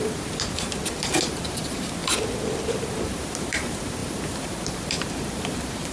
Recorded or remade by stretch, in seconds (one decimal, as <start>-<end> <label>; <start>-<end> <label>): 0.0-0.8 remade; 0.8-1.4 recorded; 1.4-2.0 remade; 2.0-2.6 recorded; 2.6-5.9 remade